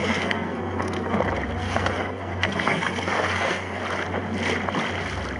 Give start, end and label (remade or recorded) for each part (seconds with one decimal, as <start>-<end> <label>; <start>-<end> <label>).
0.0-1.2 remade; 1.2-1.6 recorded; 1.6-3.8 remade; 3.8-5.4 recorded